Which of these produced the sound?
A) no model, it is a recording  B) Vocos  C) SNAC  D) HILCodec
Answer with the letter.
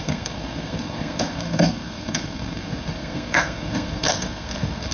C